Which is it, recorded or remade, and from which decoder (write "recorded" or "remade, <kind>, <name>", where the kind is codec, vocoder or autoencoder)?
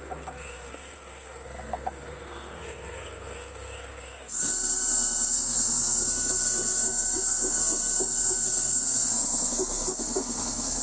remade, codec, SNAC